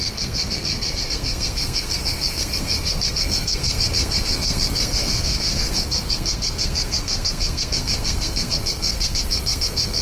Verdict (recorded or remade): remade